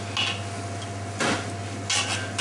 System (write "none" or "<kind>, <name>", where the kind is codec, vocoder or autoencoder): none